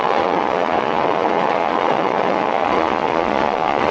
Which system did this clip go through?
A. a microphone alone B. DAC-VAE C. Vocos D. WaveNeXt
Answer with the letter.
C